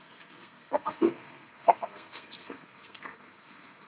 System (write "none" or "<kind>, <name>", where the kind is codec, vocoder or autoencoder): codec, SNAC